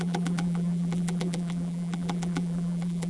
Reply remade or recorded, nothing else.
remade